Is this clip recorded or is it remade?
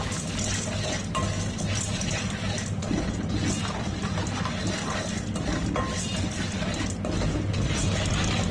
recorded